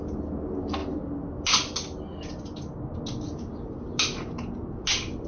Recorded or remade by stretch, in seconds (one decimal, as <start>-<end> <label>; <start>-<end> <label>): 0.0-5.3 recorded